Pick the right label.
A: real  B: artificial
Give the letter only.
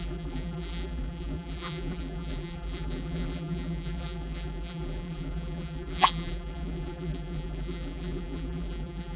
B